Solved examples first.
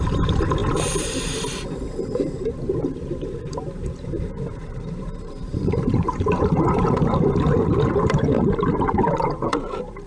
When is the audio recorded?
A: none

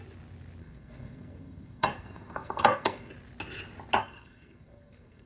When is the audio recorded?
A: 0.0-0.6; 3.1-4.0

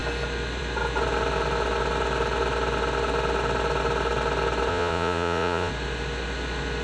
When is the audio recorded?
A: 0.0-4.7; 5.7-6.8

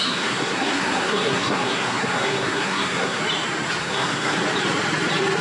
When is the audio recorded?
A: 3.2-3.8; 4.4-5.4

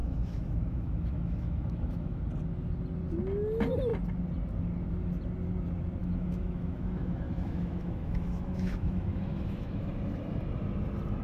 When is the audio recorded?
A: 2.2-6.0; 9.9-11.2

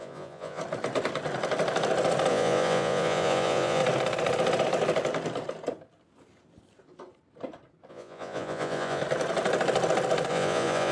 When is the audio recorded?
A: 0.6-2.3; 3.8-7.9; 9.0-10.3